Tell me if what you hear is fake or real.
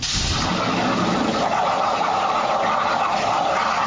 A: real